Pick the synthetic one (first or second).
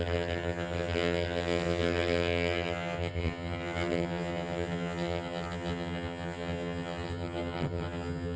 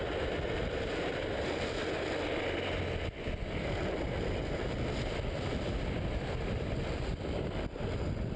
first